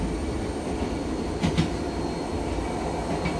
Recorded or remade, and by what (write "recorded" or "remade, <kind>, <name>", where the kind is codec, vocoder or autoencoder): recorded